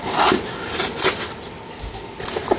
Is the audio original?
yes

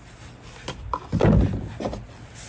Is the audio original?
yes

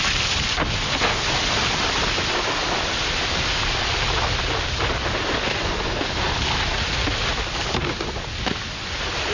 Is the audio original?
yes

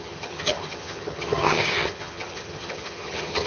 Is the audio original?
no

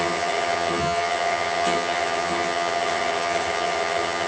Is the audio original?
no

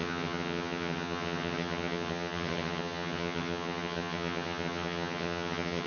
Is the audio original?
no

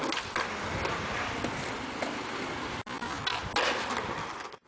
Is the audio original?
yes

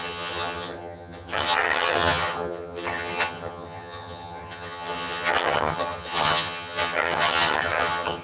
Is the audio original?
no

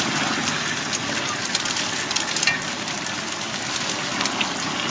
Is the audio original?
yes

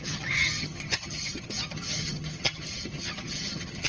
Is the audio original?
no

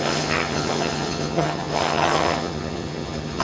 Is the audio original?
no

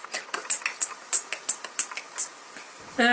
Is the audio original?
yes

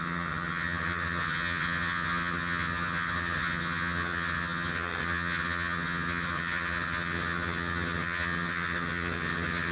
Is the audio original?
no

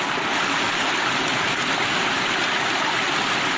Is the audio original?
yes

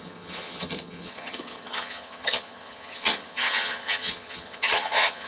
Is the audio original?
no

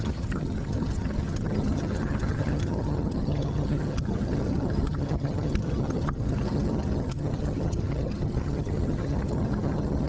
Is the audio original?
no